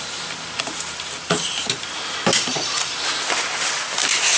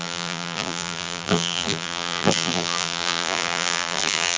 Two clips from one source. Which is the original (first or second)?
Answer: first